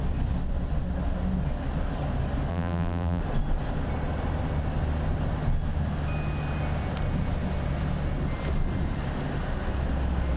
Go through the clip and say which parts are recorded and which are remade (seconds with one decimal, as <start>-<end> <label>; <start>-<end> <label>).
0.0-2.5 recorded; 2.5-3.2 remade; 3.2-10.4 recorded